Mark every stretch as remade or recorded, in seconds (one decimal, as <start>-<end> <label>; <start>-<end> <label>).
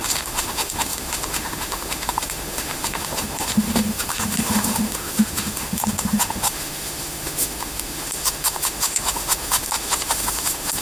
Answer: 0.0-10.8 remade